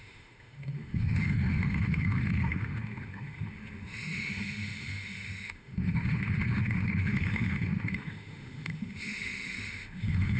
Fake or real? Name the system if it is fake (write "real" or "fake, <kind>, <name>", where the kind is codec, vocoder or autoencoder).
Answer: fake, autoencoder, DAC-VAE